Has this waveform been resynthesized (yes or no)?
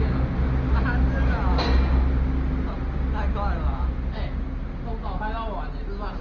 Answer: no